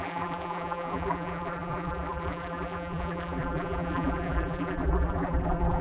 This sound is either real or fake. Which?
fake